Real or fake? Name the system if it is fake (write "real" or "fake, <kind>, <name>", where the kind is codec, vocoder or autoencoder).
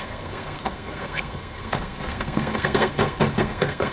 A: fake, codec, SNAC